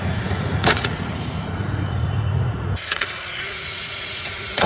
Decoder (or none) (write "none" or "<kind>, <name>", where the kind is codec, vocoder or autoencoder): vocoder, Vocos